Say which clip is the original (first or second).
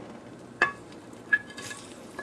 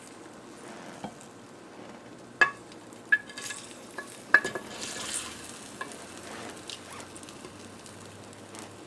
second